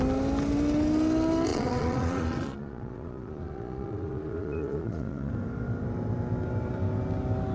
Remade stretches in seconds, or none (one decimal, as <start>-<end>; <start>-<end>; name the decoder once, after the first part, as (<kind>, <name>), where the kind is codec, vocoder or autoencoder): 1.5-5.3 (vocoder, Vocos)